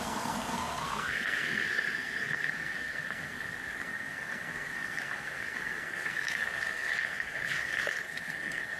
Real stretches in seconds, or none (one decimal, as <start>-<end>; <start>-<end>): none